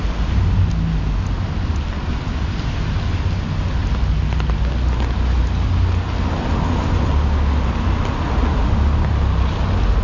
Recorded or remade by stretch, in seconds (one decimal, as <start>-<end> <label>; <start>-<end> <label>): 0.0-10.0 recorded